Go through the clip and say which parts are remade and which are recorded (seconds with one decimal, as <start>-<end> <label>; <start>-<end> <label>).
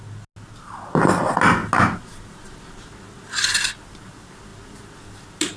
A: 0.0-5.6 recorded